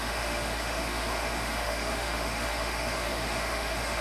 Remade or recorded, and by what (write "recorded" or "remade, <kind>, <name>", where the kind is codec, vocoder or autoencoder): remade, autoencoder, DAC-VAE